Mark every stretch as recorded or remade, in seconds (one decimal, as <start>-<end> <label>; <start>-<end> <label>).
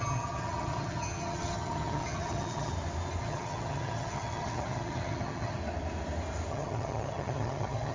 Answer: 0.0-2.7 remade; 2.7-3.2 recorded; 3.2-5.6 remade; 5.6-6.5 recorded; 6.5-7.9 remade